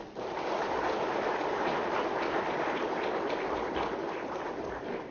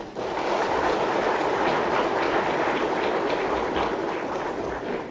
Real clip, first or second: second